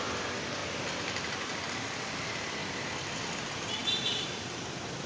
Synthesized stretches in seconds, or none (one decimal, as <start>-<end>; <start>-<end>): 0.6-1.8; 2.6-3.2; 3.8-4.6